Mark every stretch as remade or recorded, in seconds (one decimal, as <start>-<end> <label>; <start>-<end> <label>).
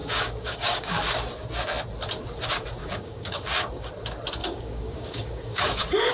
0.0-1.0 remade; 1.0-2.8 recorded; 2.8-3.9 remade; 3.9-4.4 recorded; 4.4-6.1 remade